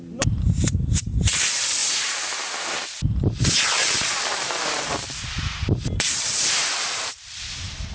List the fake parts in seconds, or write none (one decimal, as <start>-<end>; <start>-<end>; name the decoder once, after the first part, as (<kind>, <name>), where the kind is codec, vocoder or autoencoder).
0.0-1.8 (vocoder, BigVGAN v2); 4.1-7.9